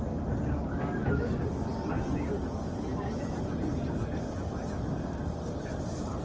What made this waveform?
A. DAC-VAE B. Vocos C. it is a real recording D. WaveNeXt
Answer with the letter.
C